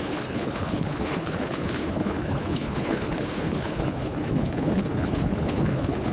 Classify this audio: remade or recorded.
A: remade